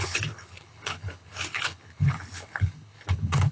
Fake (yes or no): yes